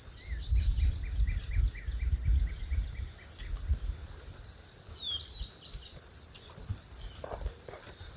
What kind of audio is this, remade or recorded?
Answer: recorded